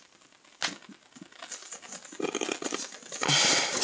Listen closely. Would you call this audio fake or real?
real